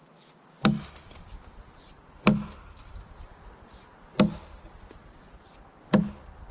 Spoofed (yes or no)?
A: no